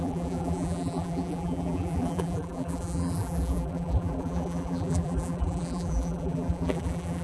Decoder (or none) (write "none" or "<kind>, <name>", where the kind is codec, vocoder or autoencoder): vocoder, BigVGAN v2